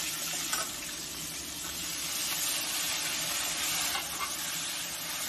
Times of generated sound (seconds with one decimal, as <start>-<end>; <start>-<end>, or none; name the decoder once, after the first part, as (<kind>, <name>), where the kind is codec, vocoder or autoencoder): 0.0-1.9 (vocoder, BigVGAN v2)